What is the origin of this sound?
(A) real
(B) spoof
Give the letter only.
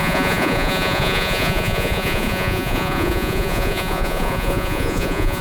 B